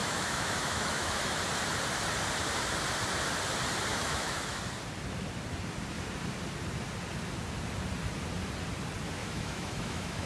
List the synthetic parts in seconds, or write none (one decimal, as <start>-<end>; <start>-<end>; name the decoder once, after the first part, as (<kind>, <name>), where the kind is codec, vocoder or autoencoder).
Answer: 0.0-1.4 (autoencoder, DAC-VAE); 3.9-4.6; 9.2-10.3

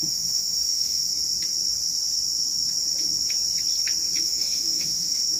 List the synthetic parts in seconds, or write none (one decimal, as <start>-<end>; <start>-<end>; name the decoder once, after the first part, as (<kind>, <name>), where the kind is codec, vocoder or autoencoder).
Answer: 0.0-1.0 (autoencoder, DAC-VAE); 4.2-5.4

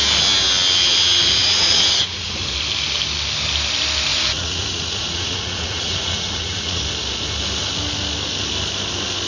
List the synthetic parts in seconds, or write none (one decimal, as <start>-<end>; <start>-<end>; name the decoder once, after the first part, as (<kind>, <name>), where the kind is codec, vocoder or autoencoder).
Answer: 1.4-2.4 (vocoder, Vocos); 4.1-6.8

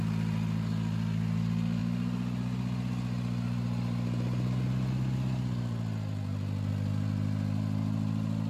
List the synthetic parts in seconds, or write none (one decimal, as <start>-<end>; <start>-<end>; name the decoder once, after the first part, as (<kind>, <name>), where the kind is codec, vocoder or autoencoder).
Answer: none

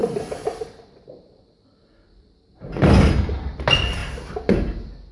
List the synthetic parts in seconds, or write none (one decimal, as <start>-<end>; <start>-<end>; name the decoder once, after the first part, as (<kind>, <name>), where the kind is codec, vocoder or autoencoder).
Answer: 0.0-3.1 (vocoder, BigVGAN v2)

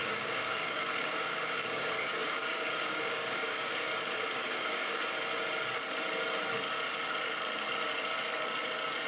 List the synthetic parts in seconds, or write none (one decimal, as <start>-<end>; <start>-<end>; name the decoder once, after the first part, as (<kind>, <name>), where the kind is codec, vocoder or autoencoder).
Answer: 0.0-3.9 (codec, DAC); 4.4-5.0

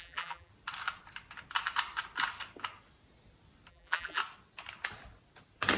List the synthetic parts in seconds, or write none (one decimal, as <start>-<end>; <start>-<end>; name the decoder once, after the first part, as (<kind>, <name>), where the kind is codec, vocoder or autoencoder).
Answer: 0.0-0.5 (vocoder, BigVGAN v2); 3.7-4.2